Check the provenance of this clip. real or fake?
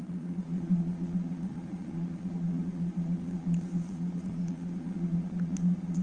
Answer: fake